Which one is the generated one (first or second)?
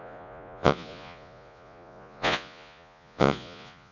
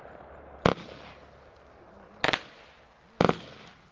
first